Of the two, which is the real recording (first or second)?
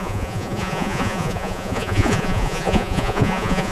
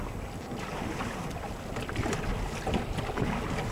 second